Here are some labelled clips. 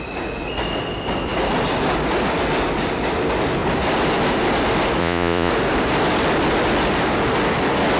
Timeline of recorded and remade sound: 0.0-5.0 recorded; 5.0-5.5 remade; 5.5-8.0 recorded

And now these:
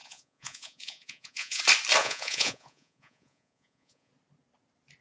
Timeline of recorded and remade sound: 0.0-1.6 remade; 1.6-2.0 recorded; 2.0-4.1 remade; 4.1-5.0 recorded

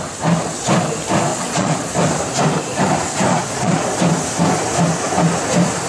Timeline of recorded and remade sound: 0.0-1.3 recorded; 1.3-1.9 remade; 1.9-3.3 recorded; 3.3-4.0 remade; 4.0-5.9 recorded

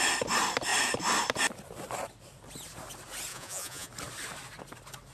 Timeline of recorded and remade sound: 0.0-3.3 recorded; 3.3-3.9 remade; 3.9-5.1 recorded

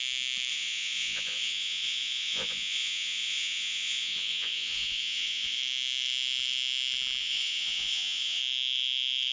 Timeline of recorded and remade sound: 0.0-0.5 recorded; 0.5-5.6 remade; 5.6-7.2 recorded; 7.2-8.4 remade; 8.4-9.3 recorded

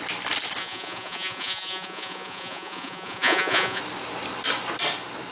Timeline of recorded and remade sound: 0.0-0.6 recorded; 0.6-3.8 remade; 3.8-5.3 recorded

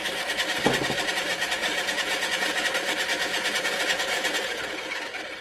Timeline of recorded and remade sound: 0.0-1.6 recorded; 1.6-2.6 remade; 2.6-3.1 recorded; 3.1-4.6 remade; 4.6-5.4 recorded

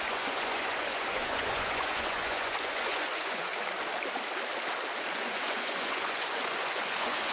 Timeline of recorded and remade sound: 0.0-3.5 remade; 3.5-5.1 recorded; 5.1-7.3 remade